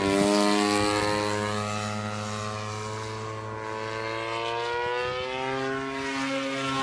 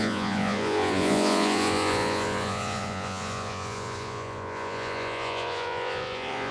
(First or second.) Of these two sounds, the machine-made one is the second